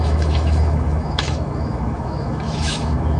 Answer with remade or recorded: remade